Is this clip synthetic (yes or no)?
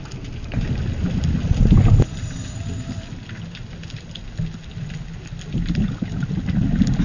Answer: no